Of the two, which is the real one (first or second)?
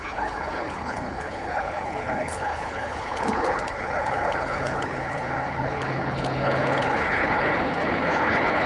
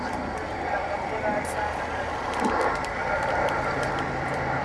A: second